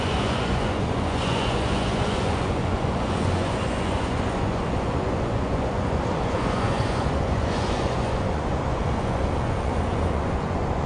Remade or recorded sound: remade